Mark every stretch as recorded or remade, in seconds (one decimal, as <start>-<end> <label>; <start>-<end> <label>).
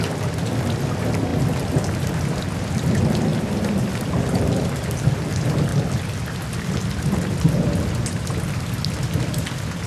0.0-3.3 recorded; 3.3-3.9 remade; 3.9-9.9 recorded